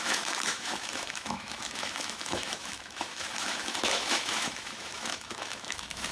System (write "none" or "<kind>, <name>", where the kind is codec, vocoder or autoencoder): autoencoder, DAC-VAE